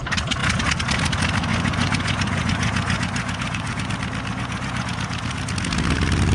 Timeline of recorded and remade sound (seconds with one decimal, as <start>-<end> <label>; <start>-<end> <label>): 0.0-1.5 recorded; 1.5-3.9 remade; 3.9-4.3 recorded; 4.3-4.9 remade; 4.9-6.3 recorded